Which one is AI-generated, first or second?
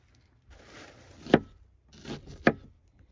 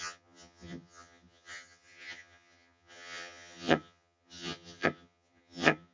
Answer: second